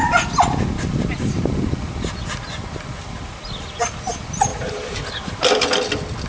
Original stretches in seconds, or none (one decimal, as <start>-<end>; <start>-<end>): 0.0-4.5; 5.5-6.3